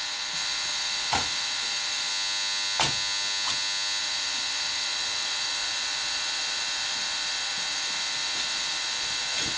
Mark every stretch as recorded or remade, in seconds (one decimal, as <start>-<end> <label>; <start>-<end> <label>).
0.0-2.1 remade; 2.1-4.0 recorded; 4.0-9.6 remade